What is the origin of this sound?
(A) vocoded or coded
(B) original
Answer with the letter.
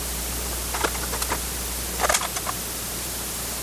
B